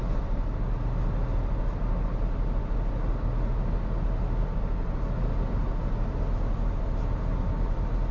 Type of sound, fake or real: real